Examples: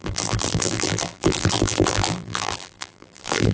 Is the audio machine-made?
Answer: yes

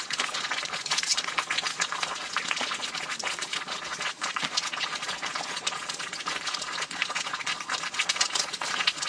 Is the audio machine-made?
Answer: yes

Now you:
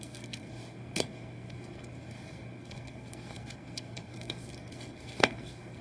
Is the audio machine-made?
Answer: yes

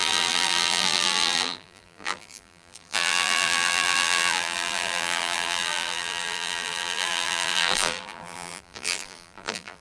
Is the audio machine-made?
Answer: yes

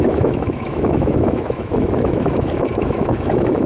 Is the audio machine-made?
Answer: yes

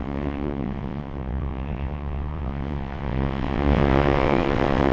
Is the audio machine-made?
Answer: yes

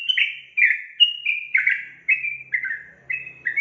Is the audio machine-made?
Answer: no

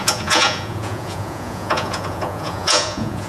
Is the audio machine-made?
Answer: yes